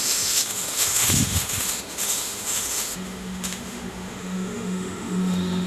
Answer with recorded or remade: remade